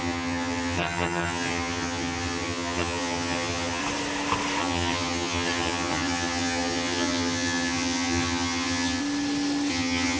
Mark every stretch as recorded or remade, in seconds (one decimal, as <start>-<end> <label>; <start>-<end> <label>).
0.0-3.8 remade; 3.8-4.6 recorded; 4.6-9.0 remade; 9.0-9.7 recorded; 9.7-10.2 remade